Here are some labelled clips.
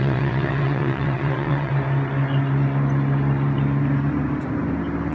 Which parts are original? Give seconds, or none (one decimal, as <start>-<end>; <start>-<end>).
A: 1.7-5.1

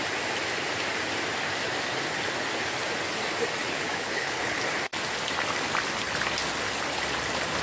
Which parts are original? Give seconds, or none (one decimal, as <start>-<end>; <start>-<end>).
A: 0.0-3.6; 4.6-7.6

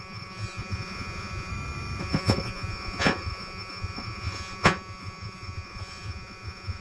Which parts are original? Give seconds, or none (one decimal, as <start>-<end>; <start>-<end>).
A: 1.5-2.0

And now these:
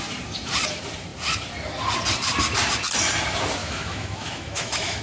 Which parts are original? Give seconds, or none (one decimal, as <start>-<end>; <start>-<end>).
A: 0.0-3.6